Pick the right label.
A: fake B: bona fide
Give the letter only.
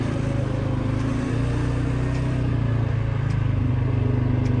B